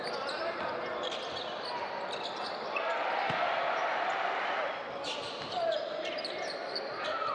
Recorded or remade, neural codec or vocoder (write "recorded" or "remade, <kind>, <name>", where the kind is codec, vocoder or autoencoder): recorded